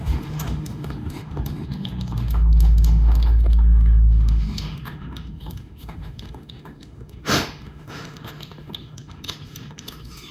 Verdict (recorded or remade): remade